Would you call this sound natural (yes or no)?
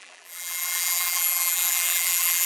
no